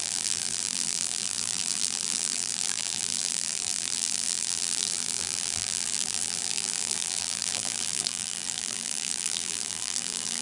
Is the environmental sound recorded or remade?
remade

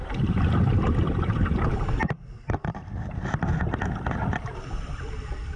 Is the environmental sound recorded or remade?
remade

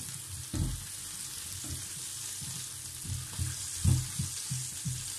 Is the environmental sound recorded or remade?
recorded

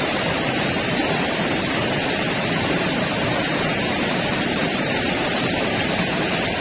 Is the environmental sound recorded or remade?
remade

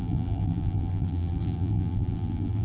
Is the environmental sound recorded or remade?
remade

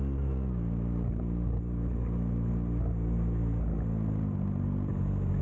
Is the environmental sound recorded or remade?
recorded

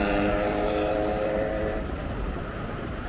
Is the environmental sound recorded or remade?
remade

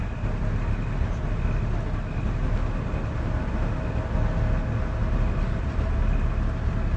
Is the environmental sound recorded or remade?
recorded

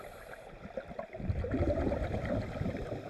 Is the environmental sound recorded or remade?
remade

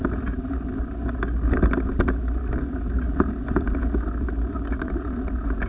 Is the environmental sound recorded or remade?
recorded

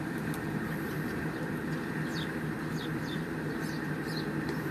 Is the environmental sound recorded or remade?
remade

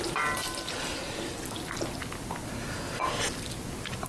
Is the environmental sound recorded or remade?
recorded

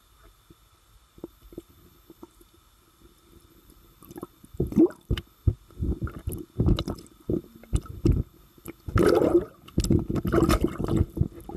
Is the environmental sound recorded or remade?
recorded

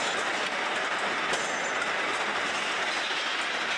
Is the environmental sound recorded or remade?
recorded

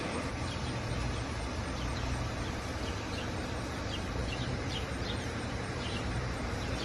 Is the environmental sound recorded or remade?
remade